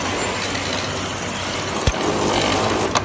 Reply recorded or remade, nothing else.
recorded